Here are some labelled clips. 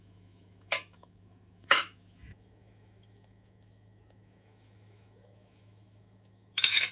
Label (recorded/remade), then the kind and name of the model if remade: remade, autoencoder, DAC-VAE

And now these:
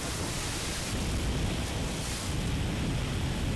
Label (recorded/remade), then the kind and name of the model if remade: recorded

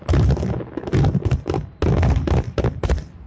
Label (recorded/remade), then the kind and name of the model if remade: recorded